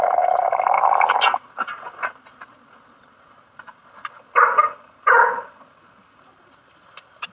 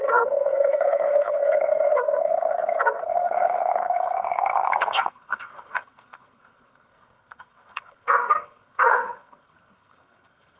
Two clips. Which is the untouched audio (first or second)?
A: first